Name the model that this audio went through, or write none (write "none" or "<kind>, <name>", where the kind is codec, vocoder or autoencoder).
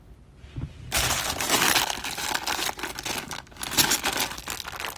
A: none